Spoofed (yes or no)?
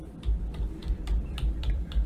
yes